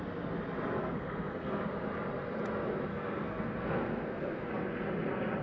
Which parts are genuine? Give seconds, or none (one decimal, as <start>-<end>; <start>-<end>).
0.0-0.8; 1.6-2.9; 4.5-5.4